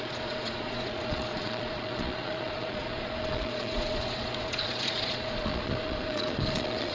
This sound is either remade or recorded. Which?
remade